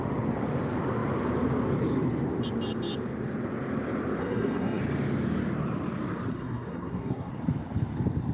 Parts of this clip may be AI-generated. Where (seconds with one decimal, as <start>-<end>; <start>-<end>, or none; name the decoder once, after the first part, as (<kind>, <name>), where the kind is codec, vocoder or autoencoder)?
4.2-4.8 (codec, SNAC); 6.3-7.3